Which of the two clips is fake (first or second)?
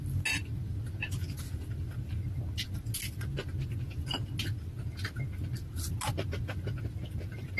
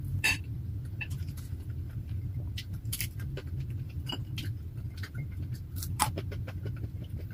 second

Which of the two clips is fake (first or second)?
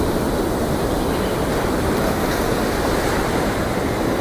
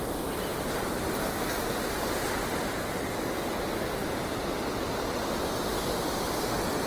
first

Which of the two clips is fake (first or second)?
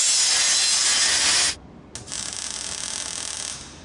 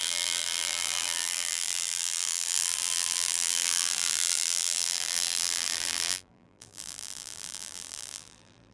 second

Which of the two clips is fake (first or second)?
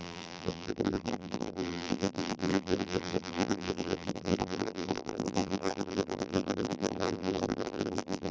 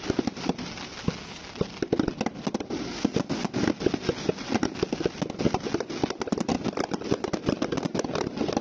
first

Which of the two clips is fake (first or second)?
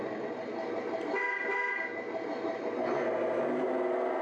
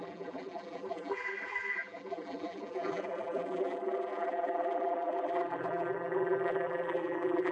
second